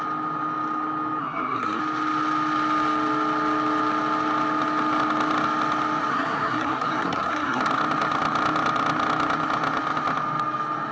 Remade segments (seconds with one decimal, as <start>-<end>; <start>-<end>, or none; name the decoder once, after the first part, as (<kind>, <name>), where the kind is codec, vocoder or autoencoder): 1.2-1.8 (codec, SNAC); 6.1-7.6